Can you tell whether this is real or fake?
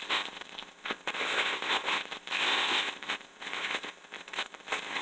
fake